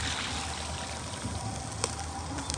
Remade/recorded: recorded